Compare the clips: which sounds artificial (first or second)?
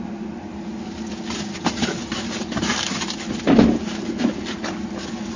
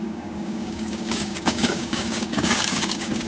second